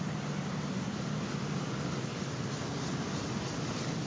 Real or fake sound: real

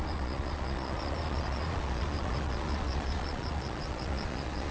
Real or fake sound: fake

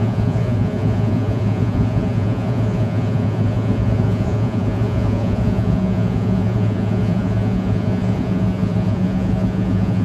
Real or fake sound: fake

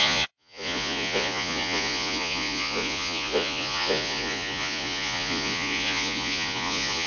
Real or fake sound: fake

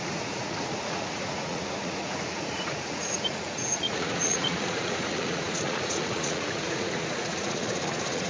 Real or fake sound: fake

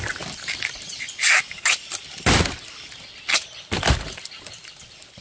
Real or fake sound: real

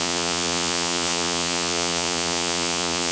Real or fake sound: fake